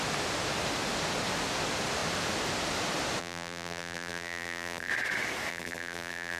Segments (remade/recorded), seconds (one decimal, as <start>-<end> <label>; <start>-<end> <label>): 0.0-3.2 recorded; 3.2-4.9 remade; 4.9-5.5 recorded; 5.5-6.4 remade